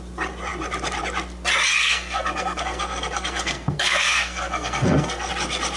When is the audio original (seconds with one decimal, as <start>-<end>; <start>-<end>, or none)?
0.0-1.8; 5.3-5.8